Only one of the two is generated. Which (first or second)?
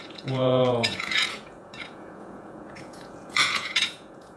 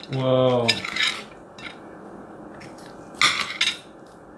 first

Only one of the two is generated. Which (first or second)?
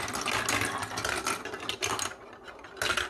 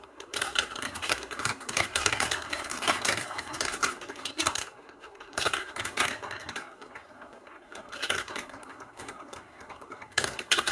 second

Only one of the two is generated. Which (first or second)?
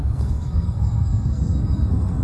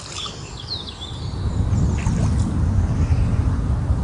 first